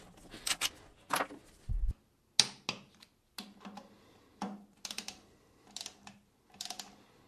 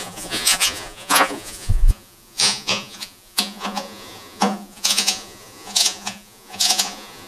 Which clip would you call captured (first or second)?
first